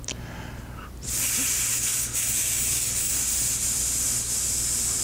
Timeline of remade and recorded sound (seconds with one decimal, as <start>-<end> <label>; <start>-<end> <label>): 0.0-1.7 recorded; 1.7-3.1 remade; 3.1-5.0 recorded